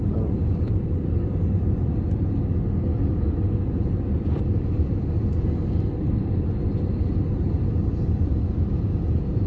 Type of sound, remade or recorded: recorded